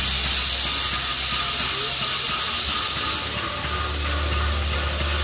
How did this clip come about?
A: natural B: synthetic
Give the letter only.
A